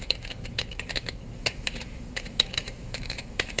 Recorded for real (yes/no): no